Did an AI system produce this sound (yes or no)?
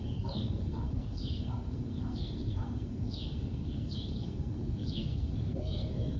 yes